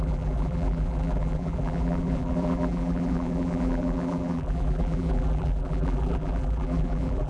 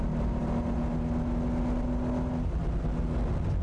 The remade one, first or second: first